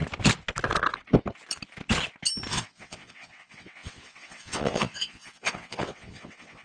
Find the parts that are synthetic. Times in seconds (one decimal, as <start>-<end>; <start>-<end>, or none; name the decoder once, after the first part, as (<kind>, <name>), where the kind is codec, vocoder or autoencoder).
2.5-6.6 (vocoder, WaveNeXt)